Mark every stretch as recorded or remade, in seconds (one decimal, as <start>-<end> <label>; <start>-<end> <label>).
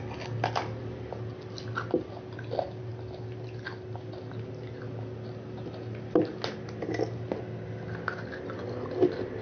0.0-9.4 recorded